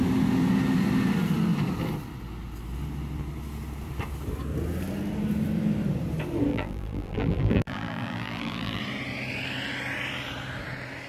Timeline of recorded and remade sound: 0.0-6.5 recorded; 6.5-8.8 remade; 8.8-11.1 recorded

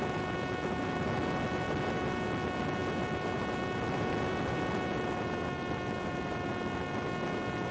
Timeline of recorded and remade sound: 0.0-7.7 recorded

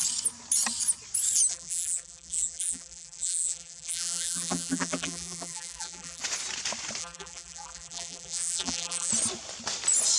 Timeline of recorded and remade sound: 0.0-1.5 recorded; 1.5-6.2 remade; 6.2-7.0 recorded; 7.0-9.1 remade; 9.1-10.2 recorded